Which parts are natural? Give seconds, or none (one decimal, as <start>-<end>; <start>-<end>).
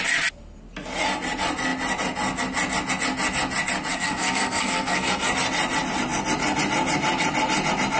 0.0-3.9; 5.3-8.0